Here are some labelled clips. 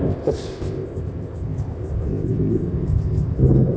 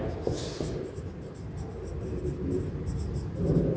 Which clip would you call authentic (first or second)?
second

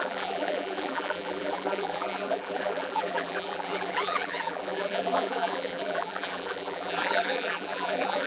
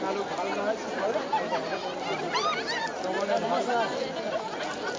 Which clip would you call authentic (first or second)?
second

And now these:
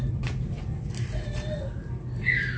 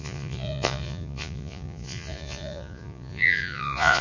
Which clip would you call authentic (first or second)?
first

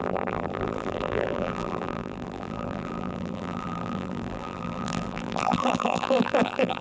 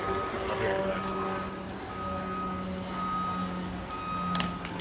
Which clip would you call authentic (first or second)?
second